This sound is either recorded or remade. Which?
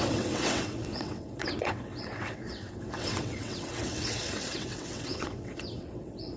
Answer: remade